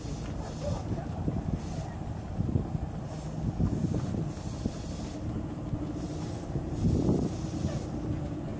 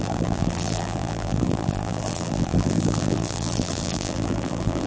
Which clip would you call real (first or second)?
first